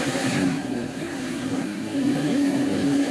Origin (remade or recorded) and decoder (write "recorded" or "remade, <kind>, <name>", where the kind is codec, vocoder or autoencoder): remade, codec, SNAC